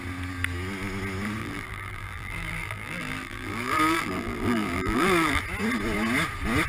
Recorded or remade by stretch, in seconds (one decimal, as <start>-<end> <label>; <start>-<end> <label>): 0.0-1.4 recorded; 1.4-5.4 remade; 5.4-6.7 recorded